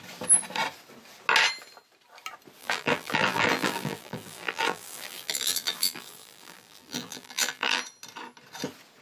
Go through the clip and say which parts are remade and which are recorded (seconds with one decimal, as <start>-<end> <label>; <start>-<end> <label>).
0.0-2.6 recorded; 2.6-7.8 remade; 7.8-9.0 recorded